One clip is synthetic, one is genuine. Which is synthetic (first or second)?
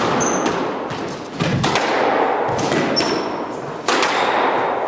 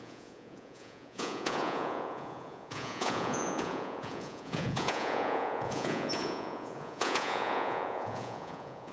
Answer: second